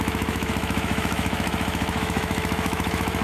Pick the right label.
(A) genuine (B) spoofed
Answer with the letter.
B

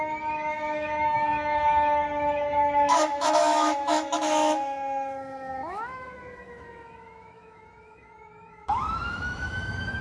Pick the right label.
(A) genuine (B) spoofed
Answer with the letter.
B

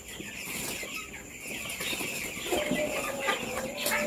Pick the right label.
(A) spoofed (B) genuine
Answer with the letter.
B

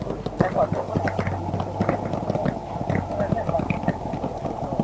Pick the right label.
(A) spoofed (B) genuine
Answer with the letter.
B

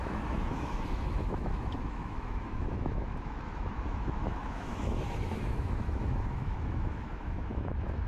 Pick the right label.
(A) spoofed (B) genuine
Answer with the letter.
A